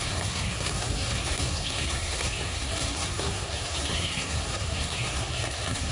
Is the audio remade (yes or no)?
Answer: yes